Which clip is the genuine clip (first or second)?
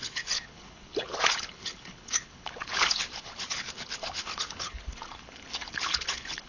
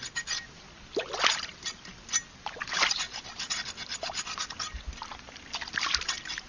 second